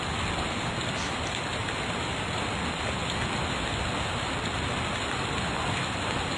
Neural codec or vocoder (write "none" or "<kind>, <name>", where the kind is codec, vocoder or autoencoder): none